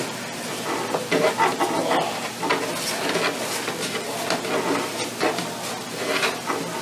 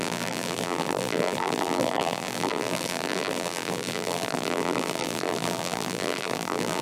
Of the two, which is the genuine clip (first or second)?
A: first